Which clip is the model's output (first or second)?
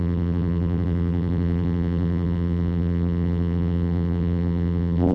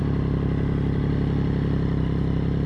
first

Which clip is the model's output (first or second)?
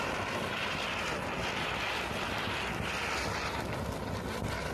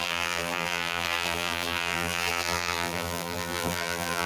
second